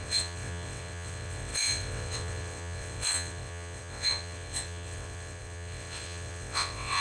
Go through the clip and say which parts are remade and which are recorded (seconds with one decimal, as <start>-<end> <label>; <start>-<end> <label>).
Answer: 0.0-7.0 remade